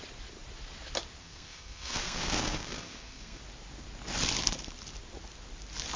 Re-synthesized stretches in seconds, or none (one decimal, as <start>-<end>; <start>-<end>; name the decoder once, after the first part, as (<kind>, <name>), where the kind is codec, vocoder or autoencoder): 1.2-3.4 (codec, SNAC)